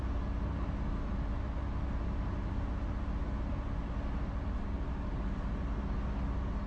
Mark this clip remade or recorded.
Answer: recorded